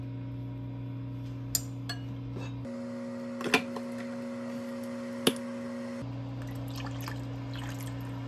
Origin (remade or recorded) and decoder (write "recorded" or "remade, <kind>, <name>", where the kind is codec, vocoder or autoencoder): recorded